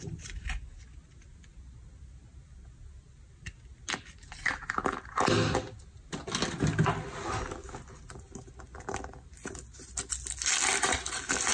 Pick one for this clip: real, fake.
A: real